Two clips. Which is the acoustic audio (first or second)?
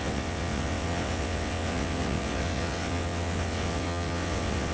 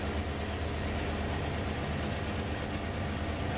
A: second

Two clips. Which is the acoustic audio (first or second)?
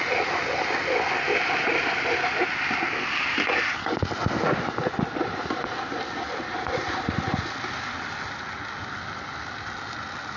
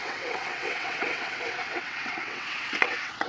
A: first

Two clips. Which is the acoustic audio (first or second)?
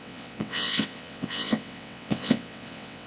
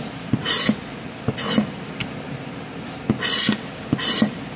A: second